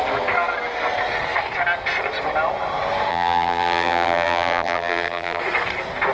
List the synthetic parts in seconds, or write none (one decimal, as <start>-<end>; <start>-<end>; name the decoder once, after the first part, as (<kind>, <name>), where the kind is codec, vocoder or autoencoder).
3.1-5.4 (vocoder, BigVGAN v2)